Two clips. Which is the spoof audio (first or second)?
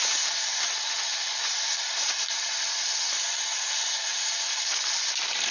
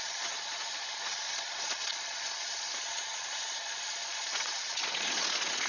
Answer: second